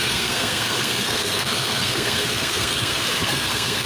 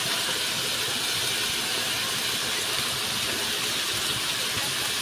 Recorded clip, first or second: second